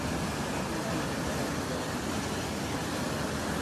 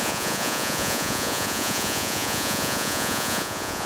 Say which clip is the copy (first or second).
second